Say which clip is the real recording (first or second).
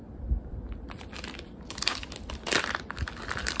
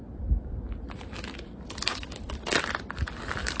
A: second